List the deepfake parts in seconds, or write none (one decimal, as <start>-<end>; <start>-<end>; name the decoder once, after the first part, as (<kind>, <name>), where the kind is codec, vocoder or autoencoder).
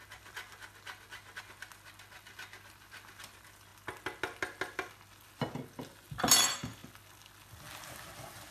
none